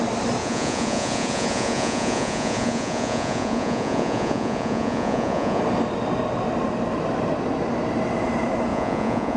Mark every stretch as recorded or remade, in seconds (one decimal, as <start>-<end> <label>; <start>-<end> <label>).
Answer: 0.0-0.4 recorded; 0.4-5.6 remade; 5.6-8.7 recorded; 8.7-9.4 remade